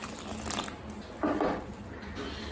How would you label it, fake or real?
real